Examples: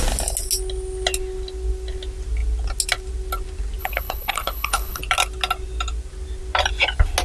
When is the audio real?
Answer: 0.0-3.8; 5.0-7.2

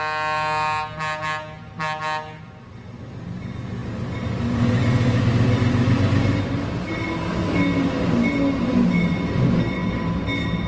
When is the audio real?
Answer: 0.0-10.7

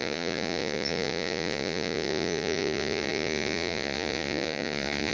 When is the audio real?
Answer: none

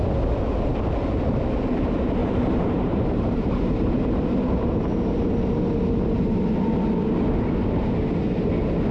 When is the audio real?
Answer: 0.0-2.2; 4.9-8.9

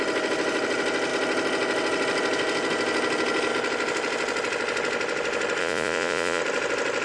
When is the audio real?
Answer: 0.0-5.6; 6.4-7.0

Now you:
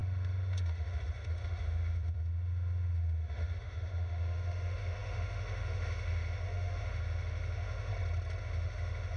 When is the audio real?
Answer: 7.9-8.4